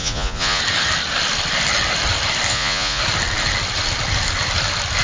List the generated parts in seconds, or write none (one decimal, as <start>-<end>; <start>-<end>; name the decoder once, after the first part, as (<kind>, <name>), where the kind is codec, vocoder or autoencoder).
0.0-0.6 (vocoder, Vocos); 2.5-3.0